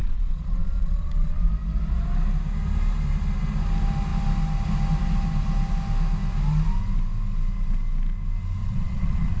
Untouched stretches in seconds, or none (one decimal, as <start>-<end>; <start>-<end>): 1.5-8.6